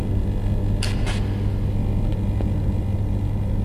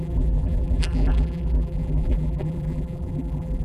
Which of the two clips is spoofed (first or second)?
second